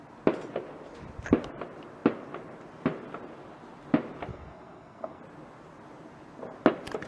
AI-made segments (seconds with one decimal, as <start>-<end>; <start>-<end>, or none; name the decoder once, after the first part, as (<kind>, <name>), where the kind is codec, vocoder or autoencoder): 4.3-5.2 (codec, SNAC)